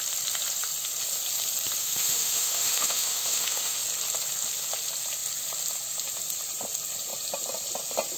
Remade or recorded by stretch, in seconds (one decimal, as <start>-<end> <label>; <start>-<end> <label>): 0.0-1.8 recorded; 1.8-3.8 remade; 3.8-8.2 recorded